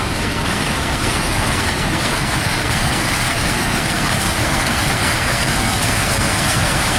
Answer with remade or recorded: remade